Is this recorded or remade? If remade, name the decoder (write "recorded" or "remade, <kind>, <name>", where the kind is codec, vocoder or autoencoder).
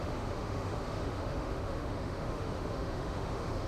remade, autoencoder, DAC-VAE